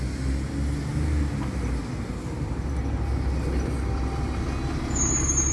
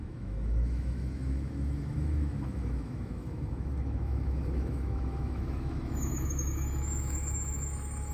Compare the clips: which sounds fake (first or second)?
second